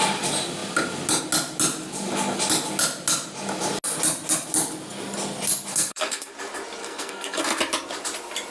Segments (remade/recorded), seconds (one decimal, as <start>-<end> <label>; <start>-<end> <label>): 0.0-5.7 recorded; 5.7-6.3 remade; 6.3-6.8 recorded; 6.8-7.6 remade; 7.6-8.5 recorded

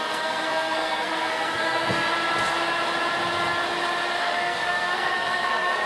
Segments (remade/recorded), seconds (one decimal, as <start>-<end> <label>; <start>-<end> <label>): 0.0-2.1 remade; 2.1-4.2 recorded; 4.2-5.9 remade

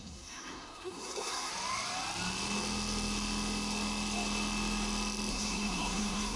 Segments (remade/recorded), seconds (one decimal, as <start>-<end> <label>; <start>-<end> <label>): 0.0-1.5 remade; 1.5-5.3 recorded; 5.3-6.4 remade

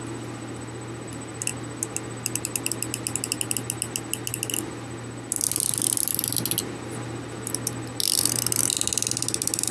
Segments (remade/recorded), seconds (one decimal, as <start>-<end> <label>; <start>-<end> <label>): 0.0-9.7 recorded